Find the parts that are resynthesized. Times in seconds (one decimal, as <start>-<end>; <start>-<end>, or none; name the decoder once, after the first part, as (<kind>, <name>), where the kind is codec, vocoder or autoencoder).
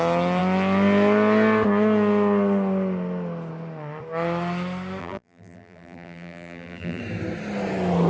5.0-7.0 (vocoder, BigVGAN v2)